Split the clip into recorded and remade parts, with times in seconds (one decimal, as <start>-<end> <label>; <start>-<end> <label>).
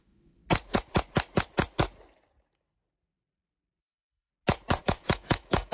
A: 0.0-0.4 remade; 0.4-3.8 recorded; 3.8-4.3 remade; 4.3-4.8 recorded; 4.8-5.7 remade